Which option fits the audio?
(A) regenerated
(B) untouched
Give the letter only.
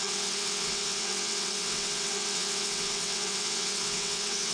A